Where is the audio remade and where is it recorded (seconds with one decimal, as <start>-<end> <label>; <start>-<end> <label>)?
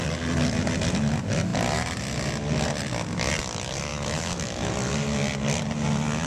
0.0-3.9 recorded; 3.9-4.7 remade; 4.7-6.3 recorded